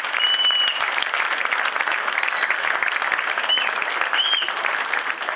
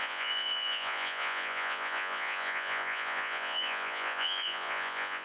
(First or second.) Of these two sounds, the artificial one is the second